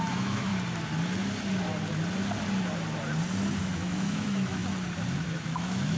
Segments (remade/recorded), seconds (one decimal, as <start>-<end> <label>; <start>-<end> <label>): 0.0-0.5 remade; 0.5-3.6 recorded; 3.6-4.6 remade; 4.6-5.3 recorded; 5.3-6.0 remade